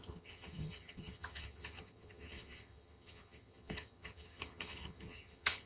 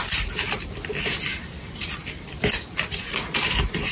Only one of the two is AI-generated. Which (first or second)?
first